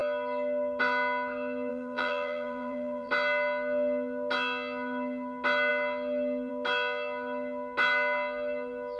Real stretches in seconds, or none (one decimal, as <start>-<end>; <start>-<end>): 0.0-1.7; 3.1-9.0